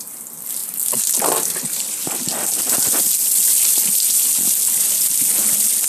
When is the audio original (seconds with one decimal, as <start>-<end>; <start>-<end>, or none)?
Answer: 0.0-5.9